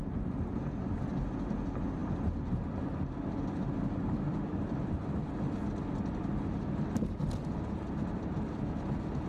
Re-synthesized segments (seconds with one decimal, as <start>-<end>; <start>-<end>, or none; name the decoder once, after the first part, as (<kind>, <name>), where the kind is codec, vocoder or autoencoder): none